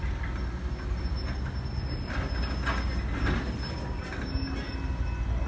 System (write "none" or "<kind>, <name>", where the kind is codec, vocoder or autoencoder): none